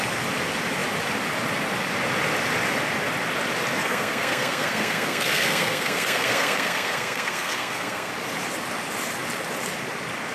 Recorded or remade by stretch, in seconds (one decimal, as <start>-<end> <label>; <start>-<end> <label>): 0.0-3.8 recorded; 3.8-8.1 remade; 8.1-10.3 recorded